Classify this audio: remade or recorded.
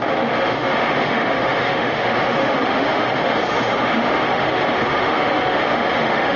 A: remade